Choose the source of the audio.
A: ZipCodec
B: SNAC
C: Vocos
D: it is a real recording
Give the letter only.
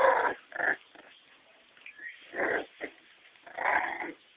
D